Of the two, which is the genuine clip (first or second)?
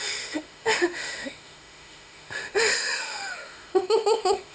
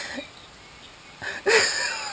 second